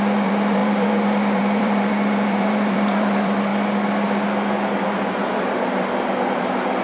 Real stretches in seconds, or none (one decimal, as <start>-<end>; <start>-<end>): 3.5-5.1